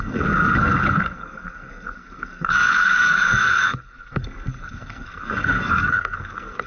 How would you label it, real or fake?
fake